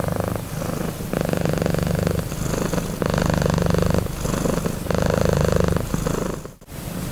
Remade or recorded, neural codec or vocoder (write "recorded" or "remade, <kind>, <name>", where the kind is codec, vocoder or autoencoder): recorded